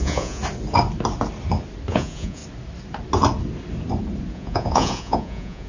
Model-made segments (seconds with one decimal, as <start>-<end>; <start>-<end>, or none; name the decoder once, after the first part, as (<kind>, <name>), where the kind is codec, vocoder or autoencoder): 0.0-0.4 (vocoder, Vocos); 1.9-2.4; 4.3-5.7